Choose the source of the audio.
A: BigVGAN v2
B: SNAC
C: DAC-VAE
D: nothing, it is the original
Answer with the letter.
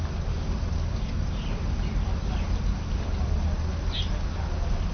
D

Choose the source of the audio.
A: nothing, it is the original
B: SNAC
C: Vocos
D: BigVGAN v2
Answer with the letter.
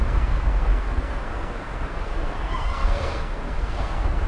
B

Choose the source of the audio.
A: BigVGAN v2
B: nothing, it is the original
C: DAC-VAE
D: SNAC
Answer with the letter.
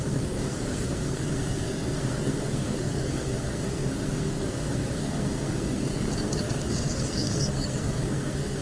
D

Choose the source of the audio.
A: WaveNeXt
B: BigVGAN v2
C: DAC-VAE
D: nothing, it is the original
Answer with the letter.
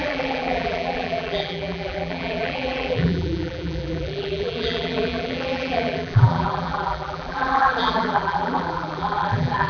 B